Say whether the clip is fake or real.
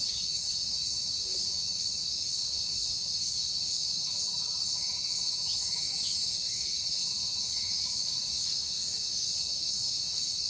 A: fake